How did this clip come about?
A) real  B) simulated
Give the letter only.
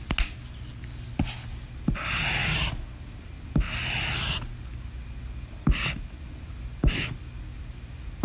A